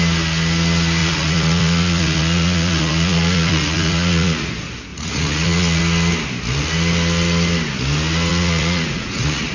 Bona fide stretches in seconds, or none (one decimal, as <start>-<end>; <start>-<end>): 0.0-1.0; 4.5-4.9; 5.8-8.3